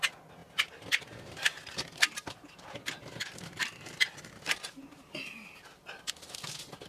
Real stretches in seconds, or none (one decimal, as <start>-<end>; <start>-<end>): 0.0-0.4; 3.2-6.9